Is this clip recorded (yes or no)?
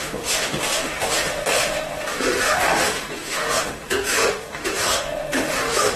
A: no